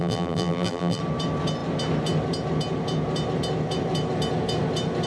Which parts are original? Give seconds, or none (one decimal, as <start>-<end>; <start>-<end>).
1.0-5.1